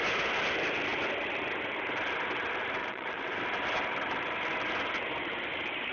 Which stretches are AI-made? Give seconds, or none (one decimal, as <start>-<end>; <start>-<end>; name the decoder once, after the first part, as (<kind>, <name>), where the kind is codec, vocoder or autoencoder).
2.8-3.4 (vocoder, Vocos)